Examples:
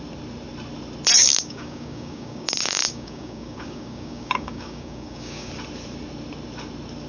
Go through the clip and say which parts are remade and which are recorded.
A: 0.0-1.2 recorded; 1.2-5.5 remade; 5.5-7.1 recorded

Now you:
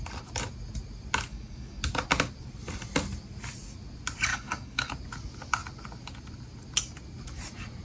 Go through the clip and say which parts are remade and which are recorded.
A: 0.0-1.3 recorded; 1.3-1.8 remade; 1.8-4.3 recorded; 4.3-4.9 remade; 4.9-7.8 recorded

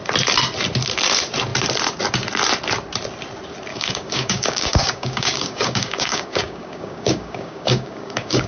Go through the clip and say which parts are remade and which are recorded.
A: 0.0-3.7 recorded; 3.7-8.5 remade

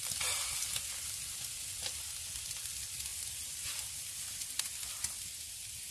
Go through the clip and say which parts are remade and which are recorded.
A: 0.0-5.9 recorded

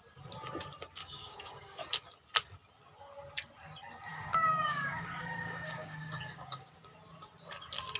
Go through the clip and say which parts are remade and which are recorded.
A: 0.0-1.0 recorded; 1.0-1.8 remade; 1.8-4.1 recorded; 4.1-6.7 remade; 6.7-8.0 recorded